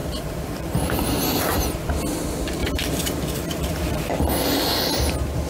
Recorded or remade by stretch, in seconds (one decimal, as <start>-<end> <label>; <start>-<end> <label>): 0.0-1.9 remade; 1.9-2.6 recorded; 2.6-4.1 remade; 4.1-5.5 recorded